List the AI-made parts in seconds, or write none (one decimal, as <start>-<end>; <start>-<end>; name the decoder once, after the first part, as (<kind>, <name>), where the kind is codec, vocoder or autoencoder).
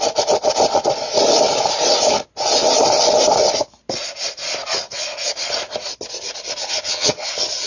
6.6-7.3 (vocoder, HiFi-GAN)